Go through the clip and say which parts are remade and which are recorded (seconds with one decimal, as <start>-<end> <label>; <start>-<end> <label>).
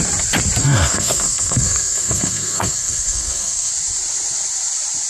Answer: 0.0-0.6 recorded; 0.6-3.7 remade; 3.7-5.1 recorded